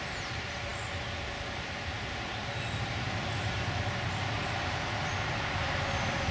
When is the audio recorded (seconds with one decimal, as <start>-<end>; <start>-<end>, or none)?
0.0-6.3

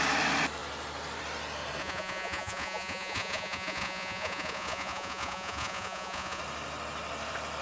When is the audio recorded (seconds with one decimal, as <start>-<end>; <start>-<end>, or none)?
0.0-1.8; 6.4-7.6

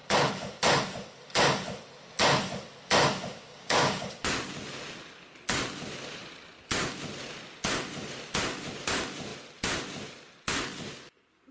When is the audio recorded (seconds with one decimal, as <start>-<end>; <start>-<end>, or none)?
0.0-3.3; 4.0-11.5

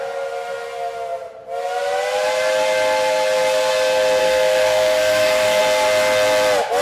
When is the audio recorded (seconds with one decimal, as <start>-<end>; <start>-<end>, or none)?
0.0-4.2; 5.6-6.8